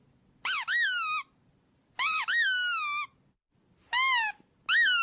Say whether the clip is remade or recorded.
recorded